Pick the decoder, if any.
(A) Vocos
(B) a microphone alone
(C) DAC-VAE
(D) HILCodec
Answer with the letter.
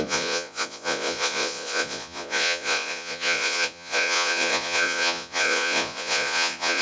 A